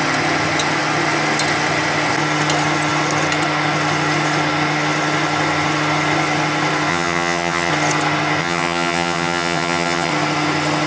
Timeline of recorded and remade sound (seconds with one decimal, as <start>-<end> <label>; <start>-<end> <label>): 0.0-6.9 recorded; 6.9-7.7 remade; 7.7-8.4 recorded; 8.4-10.1 remade; 10.1-10.9 recorded